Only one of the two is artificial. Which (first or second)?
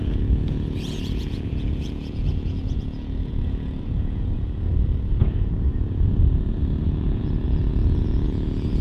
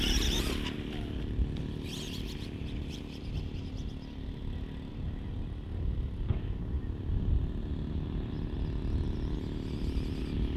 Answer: first